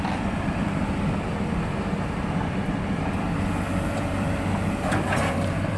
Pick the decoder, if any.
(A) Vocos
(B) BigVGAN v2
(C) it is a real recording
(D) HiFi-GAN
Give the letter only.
B